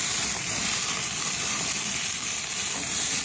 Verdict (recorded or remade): recorded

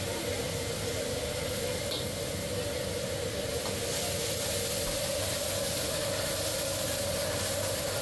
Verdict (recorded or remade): recorded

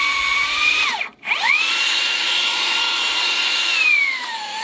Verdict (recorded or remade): remade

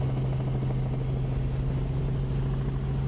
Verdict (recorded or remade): recorded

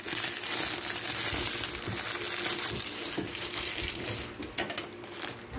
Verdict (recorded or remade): recorded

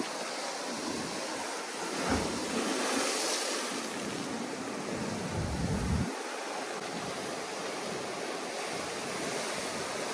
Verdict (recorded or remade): recorded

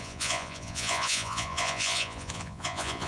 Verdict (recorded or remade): remade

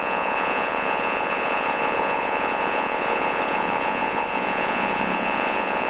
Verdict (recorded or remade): remade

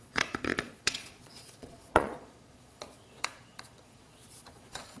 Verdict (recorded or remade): remade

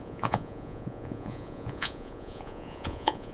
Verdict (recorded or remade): remade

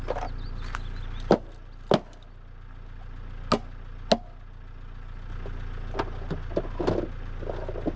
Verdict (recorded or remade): recorded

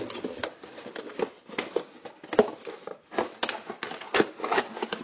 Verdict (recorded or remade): recorded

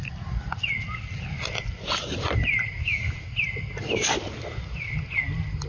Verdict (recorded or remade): recorded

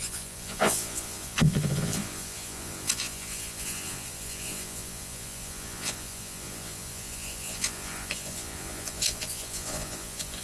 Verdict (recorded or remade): remade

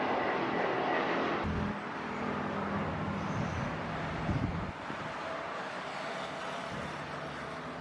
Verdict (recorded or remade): recorded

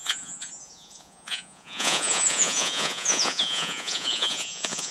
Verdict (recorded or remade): remade